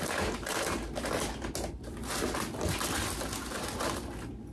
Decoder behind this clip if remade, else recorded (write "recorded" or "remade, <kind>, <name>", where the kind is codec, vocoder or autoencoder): recorded